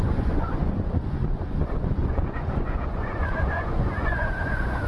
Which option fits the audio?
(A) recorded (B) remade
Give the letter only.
B